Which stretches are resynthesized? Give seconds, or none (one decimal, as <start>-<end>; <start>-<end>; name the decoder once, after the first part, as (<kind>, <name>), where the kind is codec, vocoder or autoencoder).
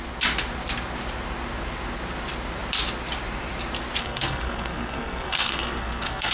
4.0-6.3 (codec, SNAC)